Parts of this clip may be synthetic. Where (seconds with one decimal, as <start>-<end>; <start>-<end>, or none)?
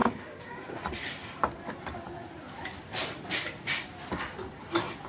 0.0-0.7